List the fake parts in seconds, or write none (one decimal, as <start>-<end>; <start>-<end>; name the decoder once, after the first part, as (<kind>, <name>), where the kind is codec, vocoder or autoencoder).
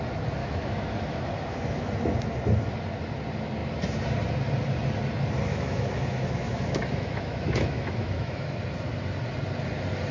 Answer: 0.4-1.9 (autoencoder, DAC-VAE); 5.5-8.6